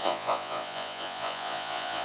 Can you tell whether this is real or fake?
fake